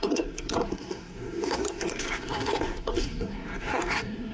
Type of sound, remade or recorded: remade